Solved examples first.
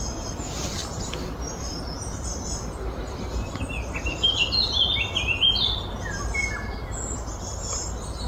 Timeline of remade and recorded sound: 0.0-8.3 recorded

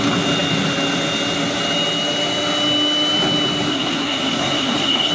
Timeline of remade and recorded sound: 0.0-3.7 recorded; 3.7-5.1 remade

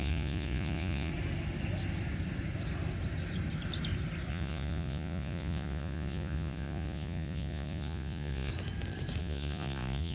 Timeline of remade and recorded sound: 0.0-1.1 remade; 1.1-4.3 recorded; 4.3-8.5 remade; 8.5-9.2 recorded; 9.2-10.1 remade

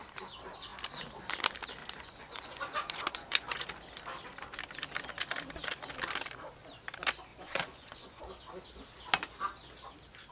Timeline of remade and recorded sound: 0.0-1.8 recorded; 1.8-3.7 remade; 3.7-7.3 recorded; 7.3-8.2 remade; 8.2-10.3 recorded

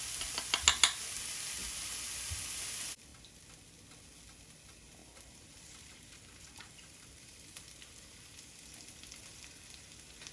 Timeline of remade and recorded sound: 0.0-5.0 recorded; 5.0-7.9 remade; 7.9-10.3 recorded

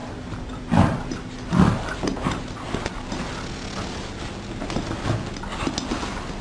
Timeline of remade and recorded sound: 0.0-2.1 remade; 2.1-5.9 recorded; 5.9-6.4 remade

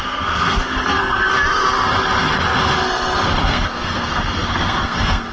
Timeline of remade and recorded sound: 0.0-1.3 remade; 1.3-3.5 recorded; 3.5-5.3 remade

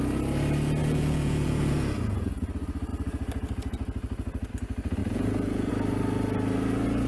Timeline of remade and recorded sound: 0.0-0.8 recorded; 0.8-2.3 remade; 2.3-5.0 recorded; 5.0-5.7 remade; 5.7-7.1 recorded